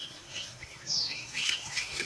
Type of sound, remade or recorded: remade